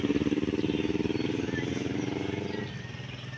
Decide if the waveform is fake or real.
real